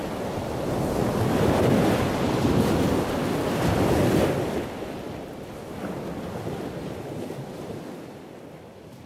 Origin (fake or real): real